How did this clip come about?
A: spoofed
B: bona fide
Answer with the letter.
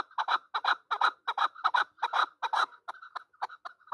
B